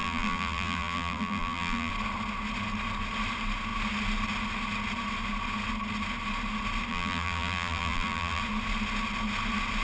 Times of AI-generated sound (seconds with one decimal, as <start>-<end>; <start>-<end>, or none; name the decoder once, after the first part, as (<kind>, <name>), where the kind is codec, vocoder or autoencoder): 0.0-1.9 (vocoder, BigVGAN v2); 6.9-8.4